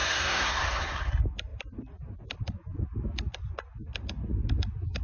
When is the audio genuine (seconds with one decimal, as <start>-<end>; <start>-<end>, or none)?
1.1-5.0